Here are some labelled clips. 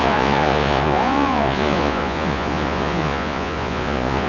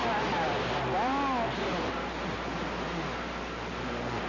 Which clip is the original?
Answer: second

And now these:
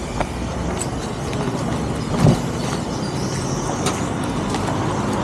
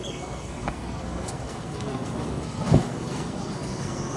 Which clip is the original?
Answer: first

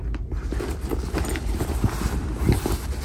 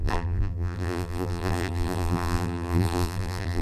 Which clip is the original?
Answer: first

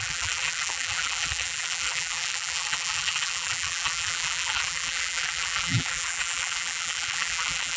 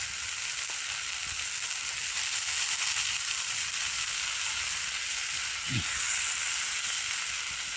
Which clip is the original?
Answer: second